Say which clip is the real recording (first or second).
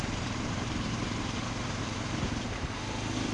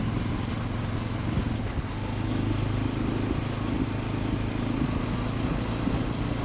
second